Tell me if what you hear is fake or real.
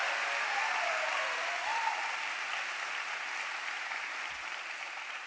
real